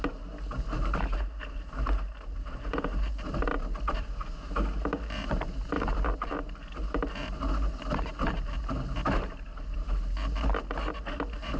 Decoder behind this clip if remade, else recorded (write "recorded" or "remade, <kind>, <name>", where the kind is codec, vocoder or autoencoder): remade, vocoder, BigVGAN v2